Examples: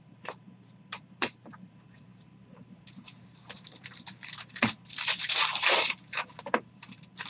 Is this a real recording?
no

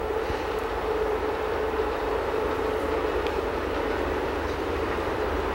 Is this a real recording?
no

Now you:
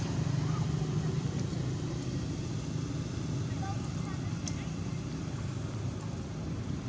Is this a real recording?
yes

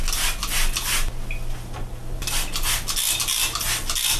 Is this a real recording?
yes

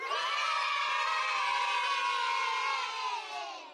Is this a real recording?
yes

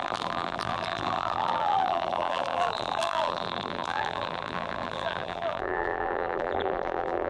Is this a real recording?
no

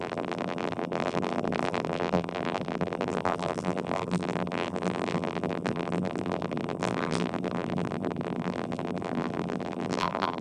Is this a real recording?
no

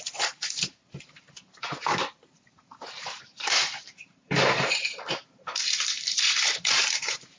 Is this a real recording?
no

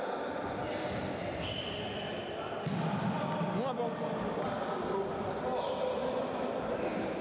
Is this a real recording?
yes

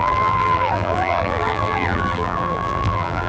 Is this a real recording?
no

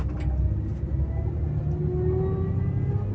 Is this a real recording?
yes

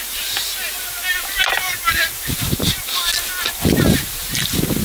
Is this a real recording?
yes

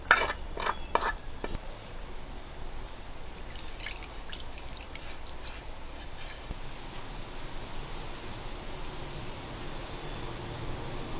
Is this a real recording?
yes